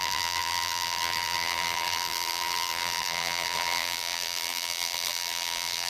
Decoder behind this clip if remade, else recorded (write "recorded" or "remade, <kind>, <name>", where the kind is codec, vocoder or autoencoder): remade, vocoder, BigVGAN v2